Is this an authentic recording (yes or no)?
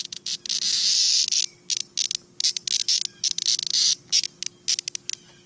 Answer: yes